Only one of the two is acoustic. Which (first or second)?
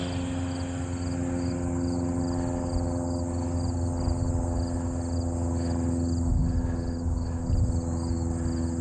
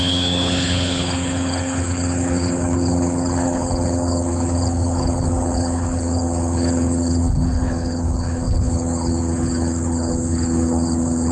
first